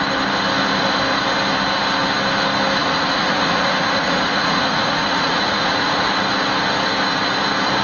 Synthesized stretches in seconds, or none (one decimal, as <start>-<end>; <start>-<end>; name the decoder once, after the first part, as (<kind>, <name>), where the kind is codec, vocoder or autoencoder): 2.8-6.0 (vocoder, Vocos)